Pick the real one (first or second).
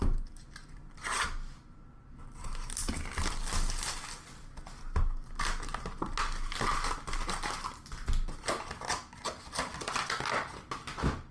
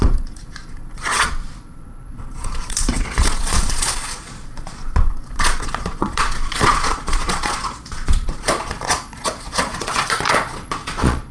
first